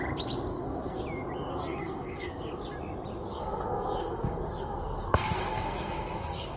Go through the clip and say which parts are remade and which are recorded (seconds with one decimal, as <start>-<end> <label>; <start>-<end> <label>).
0.0-0.5 recorded; 0.5-1.0 remade; 1.0-1.5 recorded; 1.5-2.5 remade; 2.5-3.3 recorded; 3.3-6.6 remade